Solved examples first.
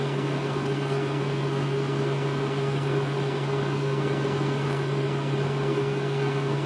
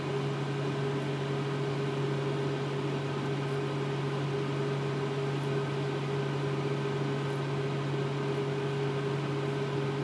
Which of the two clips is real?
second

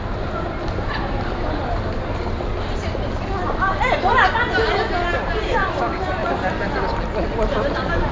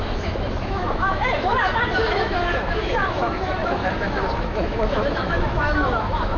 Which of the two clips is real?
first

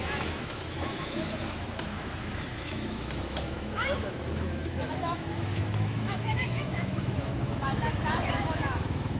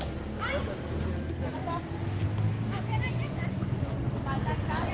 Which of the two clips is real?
second